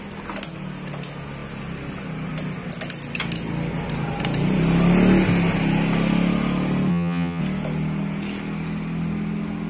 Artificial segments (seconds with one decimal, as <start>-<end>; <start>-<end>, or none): 6.9-7.4